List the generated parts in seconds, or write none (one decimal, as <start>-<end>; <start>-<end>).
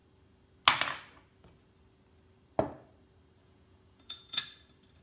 3.4-4.4